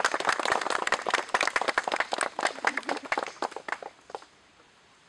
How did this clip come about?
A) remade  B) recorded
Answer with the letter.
B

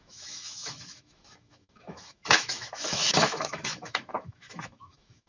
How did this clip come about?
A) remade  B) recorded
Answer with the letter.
A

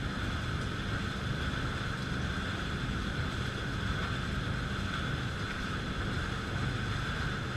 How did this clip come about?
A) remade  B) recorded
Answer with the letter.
B